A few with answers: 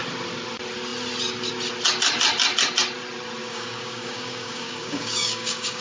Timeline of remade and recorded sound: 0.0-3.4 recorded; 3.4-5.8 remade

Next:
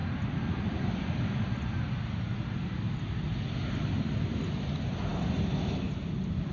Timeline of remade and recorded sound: 0.0-6.5 recorded

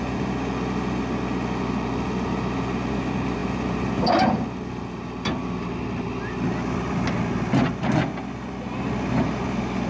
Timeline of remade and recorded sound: 0.0-9.9 recorded